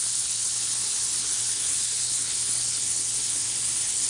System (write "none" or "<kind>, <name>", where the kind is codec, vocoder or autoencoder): codec, HILCodec